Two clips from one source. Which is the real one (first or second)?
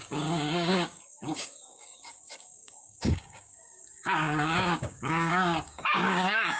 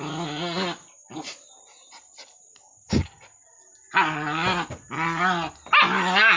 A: second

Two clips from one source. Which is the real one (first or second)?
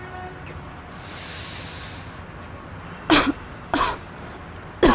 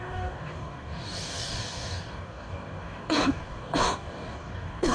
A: first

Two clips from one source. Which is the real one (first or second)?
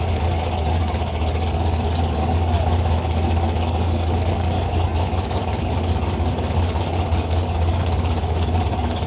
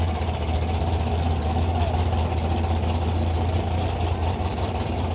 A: second